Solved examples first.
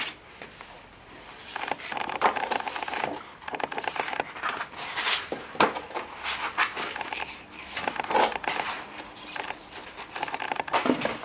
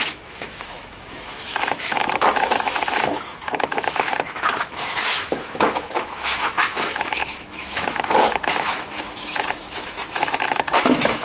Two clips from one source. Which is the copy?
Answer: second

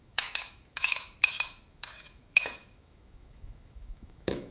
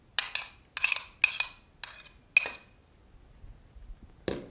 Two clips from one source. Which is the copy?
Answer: first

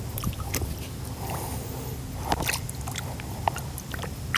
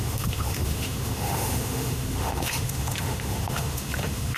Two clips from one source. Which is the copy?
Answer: second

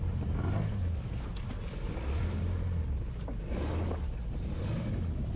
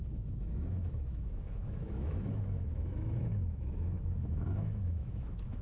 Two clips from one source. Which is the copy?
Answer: second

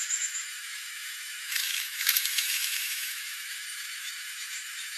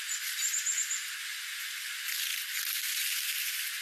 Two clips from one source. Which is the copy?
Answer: first